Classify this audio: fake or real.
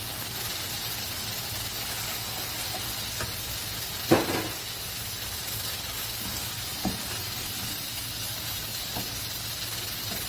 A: real